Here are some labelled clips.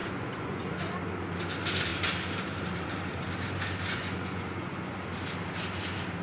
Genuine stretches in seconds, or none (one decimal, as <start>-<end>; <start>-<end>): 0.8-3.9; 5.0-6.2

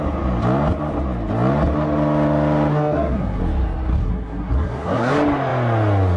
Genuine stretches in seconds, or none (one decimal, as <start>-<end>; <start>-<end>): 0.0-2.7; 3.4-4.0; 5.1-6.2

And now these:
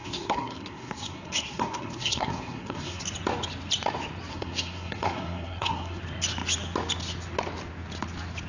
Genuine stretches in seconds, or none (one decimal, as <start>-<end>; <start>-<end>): 3.0-4.3; 6.0-8.5

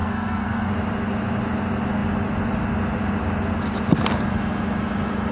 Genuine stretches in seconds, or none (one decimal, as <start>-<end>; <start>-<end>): 0.7-5.3